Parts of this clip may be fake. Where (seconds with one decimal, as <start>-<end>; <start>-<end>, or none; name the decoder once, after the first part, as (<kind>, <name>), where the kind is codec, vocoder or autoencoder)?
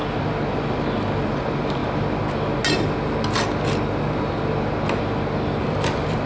1.2-1.8 (vocoder, BigVGAN v2); 5.6-6.3